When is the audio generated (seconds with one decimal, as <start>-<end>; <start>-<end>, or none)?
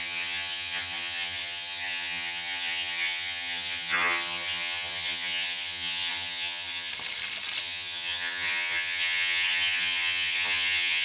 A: 0.0-6.9; 7.6-11.0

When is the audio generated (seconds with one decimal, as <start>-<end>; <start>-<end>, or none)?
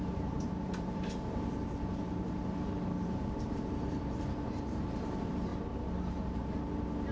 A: 0.0-5.5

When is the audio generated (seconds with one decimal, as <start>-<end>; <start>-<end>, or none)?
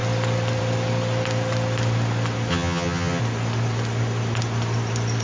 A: 2.5-3.2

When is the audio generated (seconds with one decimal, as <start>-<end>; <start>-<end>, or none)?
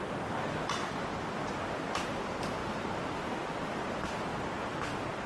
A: none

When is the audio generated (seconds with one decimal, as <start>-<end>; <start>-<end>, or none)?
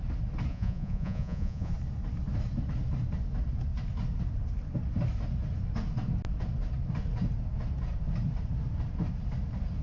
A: 0.5-1.7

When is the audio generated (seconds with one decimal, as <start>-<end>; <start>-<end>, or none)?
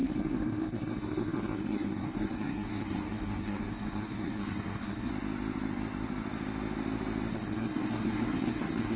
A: 0.0-5.1; 7.3-9.0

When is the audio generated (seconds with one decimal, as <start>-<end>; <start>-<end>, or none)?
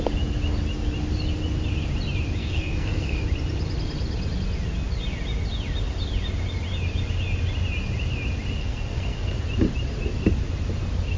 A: 2.4-3.2; 8.6-9.3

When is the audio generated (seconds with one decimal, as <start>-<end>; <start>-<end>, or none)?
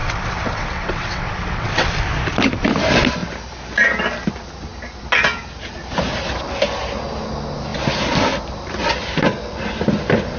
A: 0.0-1.9